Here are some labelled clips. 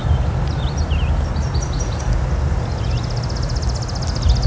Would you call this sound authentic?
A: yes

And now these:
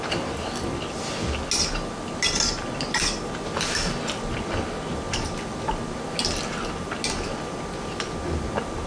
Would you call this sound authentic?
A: yes